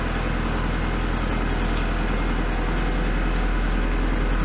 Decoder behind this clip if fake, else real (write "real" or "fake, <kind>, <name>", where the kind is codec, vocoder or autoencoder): real